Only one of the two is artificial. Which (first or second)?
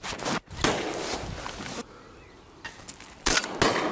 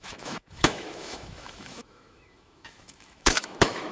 second